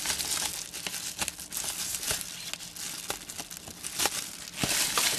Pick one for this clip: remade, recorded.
recorded